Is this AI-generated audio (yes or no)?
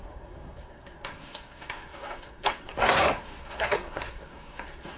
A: yes